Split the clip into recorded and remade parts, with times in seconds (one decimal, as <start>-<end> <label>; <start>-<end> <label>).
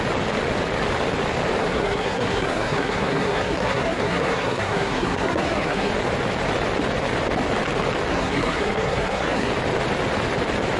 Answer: 0.0-1.6 recorded; 1.6-5.9 remade; 5.9-8.1 recorded; 8.1-9.5 remade; 9.5-10.8 recorded